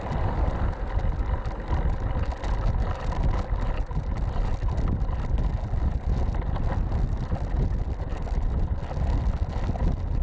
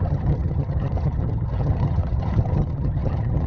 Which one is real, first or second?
first